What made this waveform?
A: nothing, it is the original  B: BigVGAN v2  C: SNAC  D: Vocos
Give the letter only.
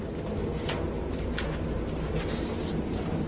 A